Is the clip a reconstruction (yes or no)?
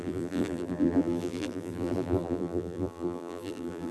yes